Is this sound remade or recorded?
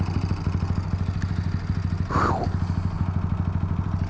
recorded